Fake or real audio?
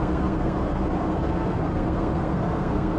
fake